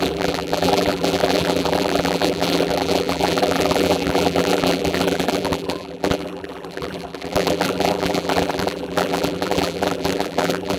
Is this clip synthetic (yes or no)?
yes